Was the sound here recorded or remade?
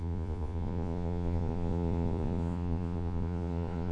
remade